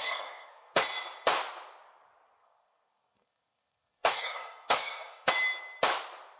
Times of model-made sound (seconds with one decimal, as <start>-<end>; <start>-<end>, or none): 0.0-0.8; 2.4-5.3